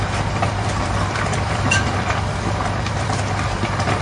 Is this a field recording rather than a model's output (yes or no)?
no